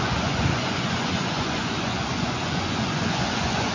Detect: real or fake fake